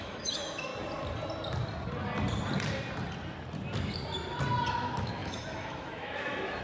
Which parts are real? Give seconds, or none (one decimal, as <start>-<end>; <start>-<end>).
0.7-4.7